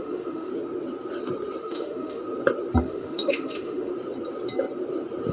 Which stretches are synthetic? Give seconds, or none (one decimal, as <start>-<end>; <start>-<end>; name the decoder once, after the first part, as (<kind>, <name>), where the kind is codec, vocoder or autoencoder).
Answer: 0.0-0.5 (autoencoder, DAC-VAE); 1.6-2.2; 2.8-3.9